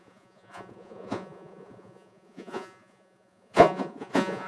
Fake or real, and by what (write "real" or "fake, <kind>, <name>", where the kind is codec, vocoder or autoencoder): fake, vocoder, Vocos